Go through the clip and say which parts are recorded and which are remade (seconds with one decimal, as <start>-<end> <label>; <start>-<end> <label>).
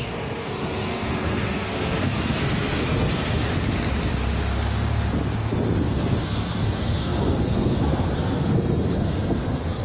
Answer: 0.0-3.4 remade; 3.4-5.8 recorded; 5.8-9.8 remade